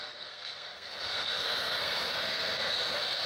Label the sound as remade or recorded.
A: remade